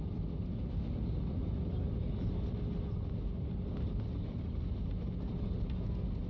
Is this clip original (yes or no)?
yes